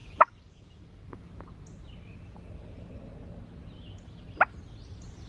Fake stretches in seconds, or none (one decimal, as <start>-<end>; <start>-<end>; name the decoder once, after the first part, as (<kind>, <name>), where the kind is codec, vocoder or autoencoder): 0.0-1.4 (codec, DAC)